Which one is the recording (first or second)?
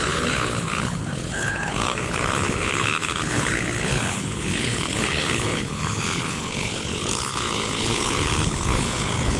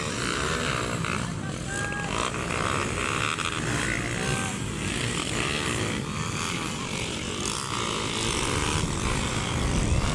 second